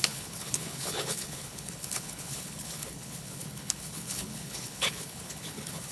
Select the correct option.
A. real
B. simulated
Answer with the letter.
B